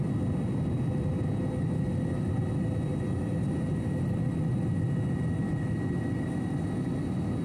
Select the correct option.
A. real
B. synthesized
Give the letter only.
A